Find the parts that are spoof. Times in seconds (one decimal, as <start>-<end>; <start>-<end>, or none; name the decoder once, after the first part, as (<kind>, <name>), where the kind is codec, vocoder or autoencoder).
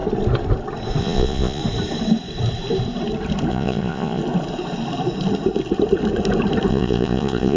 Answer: 1.0-1.6 (vocoder, Vocos); 3.5-4.2; 6.7-7.6